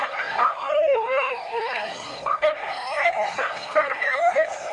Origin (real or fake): fake